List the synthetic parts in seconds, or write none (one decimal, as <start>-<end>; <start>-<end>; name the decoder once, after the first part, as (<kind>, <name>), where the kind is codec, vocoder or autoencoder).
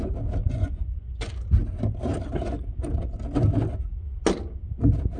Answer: 0.4-1.3 (vocoder, Vocos)